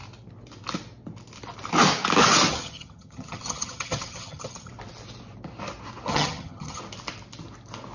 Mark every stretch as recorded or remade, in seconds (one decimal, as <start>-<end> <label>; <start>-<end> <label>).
0.0-2.5 recorded; 2.5-4.7 remade; 4.7-6.1 recorded; 6.1-6.8 remade; 6.8-7.9 recorded